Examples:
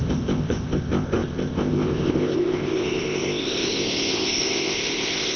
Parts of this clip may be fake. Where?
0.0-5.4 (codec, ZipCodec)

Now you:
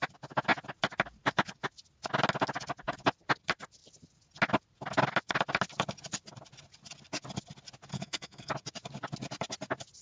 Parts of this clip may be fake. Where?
7.9-8.5 (codec, SNAC)

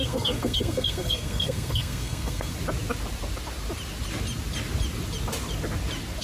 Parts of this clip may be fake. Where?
0.0-2.5 (codec, SNAC)

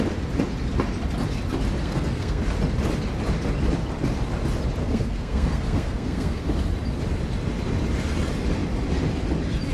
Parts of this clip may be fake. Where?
1.8-2.4 (codec, SNAC); 4.8-6.4

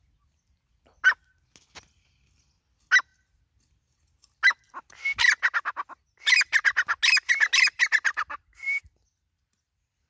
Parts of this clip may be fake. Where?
none